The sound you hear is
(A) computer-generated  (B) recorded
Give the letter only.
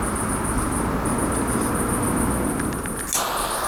B